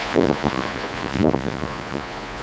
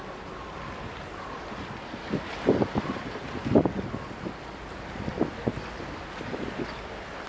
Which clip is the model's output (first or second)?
first